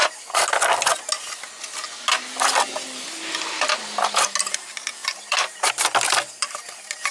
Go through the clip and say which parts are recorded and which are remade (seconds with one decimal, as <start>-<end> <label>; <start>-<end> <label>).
0.0-5.0 recorded; 5.0-5.7 remade; 5.7-7.1 recorded